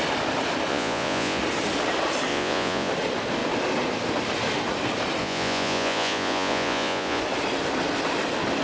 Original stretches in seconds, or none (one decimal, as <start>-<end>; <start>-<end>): 0.0-0.7; 1.4-2.3; 2.9-5.2; 7.2-8.6